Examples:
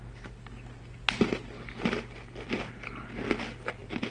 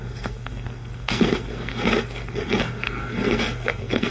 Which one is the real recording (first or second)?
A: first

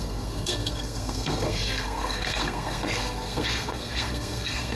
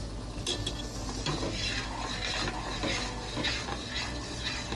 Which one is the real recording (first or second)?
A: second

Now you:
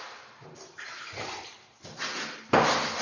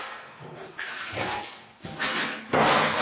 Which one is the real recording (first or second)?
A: first